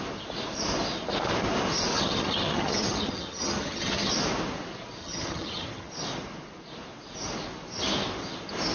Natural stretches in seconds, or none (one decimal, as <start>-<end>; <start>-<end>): 0.0-1.9; 4.1-5.0; 5.9-8.7

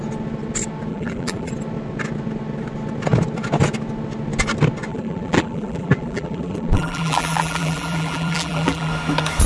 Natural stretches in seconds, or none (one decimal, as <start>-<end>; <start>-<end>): 0.0-0.9; 1.5-4.9; 8.9-9.5